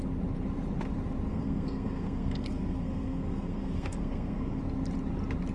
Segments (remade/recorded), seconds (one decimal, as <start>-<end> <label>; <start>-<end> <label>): 0.0-1.3 recorded; 1.3-4.6 remade; 4.6-5.5 recorded